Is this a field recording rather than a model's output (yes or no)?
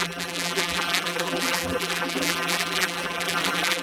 no